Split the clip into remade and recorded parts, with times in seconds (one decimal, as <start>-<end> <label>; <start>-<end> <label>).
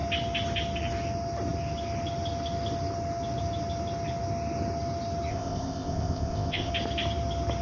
0.0-5.3 recorded; 5.3-6.7 remade; 6.7-7.6 recorded